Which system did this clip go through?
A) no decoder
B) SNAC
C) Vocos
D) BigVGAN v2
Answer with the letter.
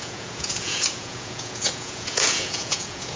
C